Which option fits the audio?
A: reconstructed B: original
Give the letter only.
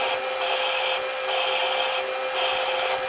B